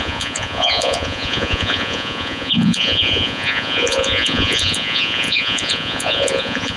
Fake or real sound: fake